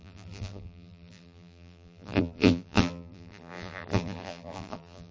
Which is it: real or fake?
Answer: fake